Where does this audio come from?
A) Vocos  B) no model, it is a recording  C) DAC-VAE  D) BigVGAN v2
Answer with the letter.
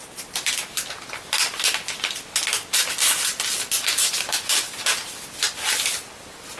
B